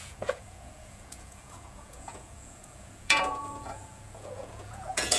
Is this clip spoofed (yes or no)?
yes